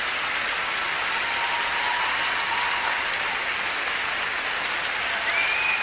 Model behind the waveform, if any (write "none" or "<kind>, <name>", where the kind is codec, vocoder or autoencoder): none